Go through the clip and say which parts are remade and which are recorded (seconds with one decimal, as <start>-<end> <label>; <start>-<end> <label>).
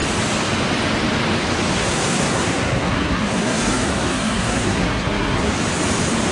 0.0-1.7 recorded; 1.7-5.5 remade; 5.5-6.3 recorded